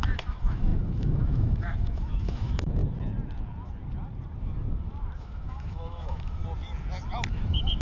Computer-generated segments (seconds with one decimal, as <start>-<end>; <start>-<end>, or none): 0.0-2.8; 5.2-6.4; 7.3-7.8